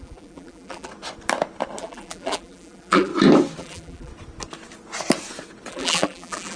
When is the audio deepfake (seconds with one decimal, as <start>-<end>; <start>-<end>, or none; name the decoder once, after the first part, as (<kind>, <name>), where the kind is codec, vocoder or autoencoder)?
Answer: 0.0-0.9 (vocoder, BigVGAN v2); 1.8-3.1; 3.6-4.1; 5.7-6.6